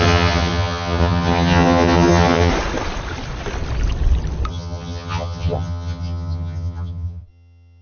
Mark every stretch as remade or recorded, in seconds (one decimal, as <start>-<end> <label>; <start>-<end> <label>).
0.0-2.5 remade; 2.5-4.5 recorded; 4.5-7.8 remade